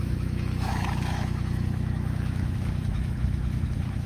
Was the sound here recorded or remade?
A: remade